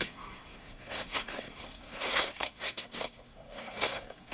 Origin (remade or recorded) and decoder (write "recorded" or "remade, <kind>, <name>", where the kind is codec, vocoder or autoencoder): remade, codec, SNAC